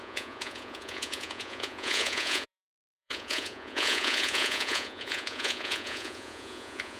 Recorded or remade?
remade